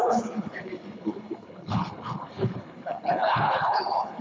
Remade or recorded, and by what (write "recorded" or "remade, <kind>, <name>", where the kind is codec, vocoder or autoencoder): remade, codec, HILCodec